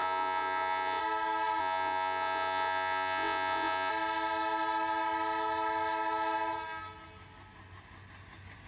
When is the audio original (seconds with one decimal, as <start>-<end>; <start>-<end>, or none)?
1.0-1.6; 3.9-8.7